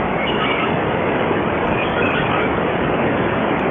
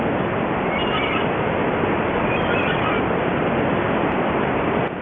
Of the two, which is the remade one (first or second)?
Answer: first